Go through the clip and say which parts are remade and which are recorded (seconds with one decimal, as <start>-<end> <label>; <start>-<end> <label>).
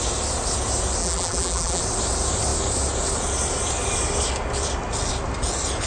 0.0-1.0 recorded; 1.0-1.8 remade; 1.8-5.9 recorded